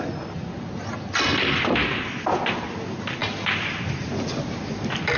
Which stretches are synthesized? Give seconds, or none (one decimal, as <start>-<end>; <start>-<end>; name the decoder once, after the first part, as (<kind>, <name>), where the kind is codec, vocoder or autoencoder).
3.2-4.3 (vocoder, BigVGAN v2)